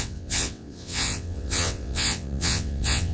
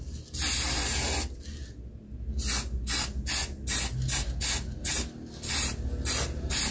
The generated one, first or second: first